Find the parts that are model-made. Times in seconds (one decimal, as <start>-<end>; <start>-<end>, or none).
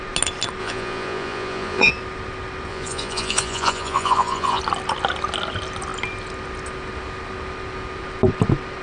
0.6-1.9; 2.7-4.6